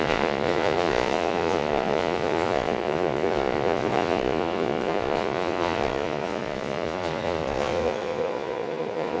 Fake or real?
fake